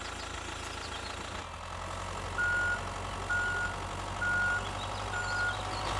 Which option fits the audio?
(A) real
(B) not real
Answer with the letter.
A